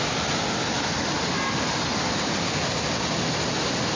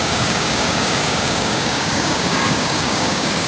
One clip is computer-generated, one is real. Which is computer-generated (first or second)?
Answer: second